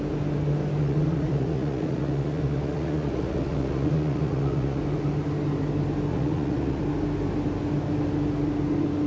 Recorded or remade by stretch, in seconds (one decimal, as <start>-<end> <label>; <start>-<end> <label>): 0.0-0.8 recorded; 0.8-4.8 remade; 4.8-6.1 recorded; 6.1-6.8 remade; 6.8-9.1 recorded